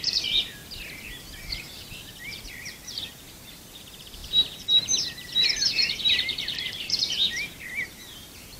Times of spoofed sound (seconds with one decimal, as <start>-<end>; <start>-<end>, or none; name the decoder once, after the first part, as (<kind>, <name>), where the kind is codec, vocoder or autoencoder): 0.0-0.6 (vocoder, BigVGAN v2); 2.0-8.6